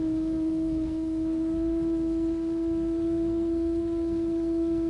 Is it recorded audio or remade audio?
remade